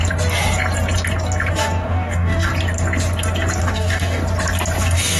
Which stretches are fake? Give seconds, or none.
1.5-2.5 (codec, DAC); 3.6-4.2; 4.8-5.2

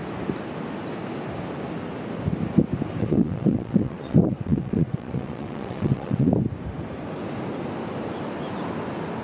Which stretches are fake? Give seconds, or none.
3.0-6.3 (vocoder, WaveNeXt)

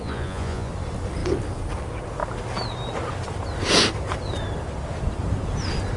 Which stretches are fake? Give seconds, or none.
0.0-0.7 (vocoder, Vocos)

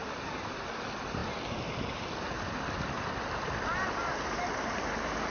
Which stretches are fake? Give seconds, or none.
none

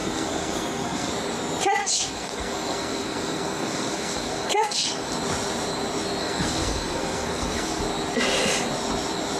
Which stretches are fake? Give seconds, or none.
0.0-1.1 (codec, SNAC); 1.8-5.1; 6.2-7.8

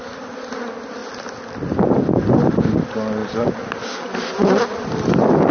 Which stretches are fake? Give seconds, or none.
none